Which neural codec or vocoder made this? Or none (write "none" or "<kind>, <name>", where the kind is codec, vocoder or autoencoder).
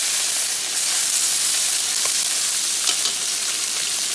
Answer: none